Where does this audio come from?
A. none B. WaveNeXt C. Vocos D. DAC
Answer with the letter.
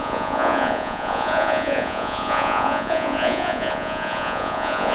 C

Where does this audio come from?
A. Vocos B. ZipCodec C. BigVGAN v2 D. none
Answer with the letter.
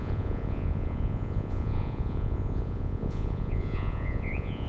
A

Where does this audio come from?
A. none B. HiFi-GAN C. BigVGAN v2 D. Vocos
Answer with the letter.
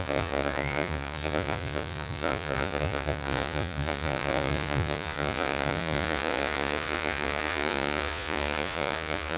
D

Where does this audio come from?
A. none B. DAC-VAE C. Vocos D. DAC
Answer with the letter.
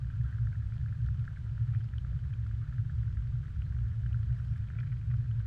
A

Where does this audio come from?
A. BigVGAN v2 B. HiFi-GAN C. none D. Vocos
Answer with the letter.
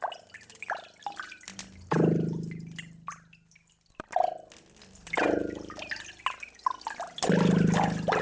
C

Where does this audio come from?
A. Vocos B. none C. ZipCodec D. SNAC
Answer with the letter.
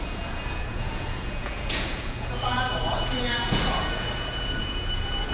A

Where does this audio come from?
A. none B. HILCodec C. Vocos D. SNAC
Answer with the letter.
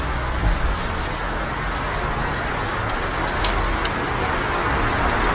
A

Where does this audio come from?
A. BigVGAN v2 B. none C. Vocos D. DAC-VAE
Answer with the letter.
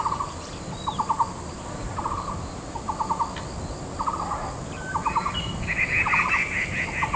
B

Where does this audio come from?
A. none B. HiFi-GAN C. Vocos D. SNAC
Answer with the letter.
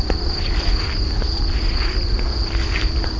A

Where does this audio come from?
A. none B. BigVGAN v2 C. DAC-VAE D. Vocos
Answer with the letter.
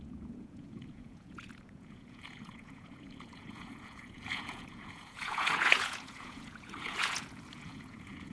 D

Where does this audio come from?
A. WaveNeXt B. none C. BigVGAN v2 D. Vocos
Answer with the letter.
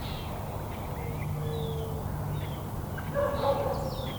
B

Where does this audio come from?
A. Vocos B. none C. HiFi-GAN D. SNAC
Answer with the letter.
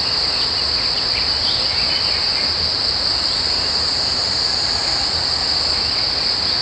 B